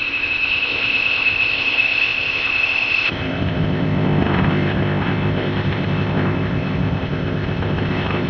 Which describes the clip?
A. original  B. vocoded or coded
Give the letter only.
B